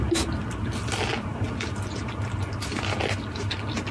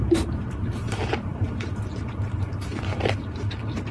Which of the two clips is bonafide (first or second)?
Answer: first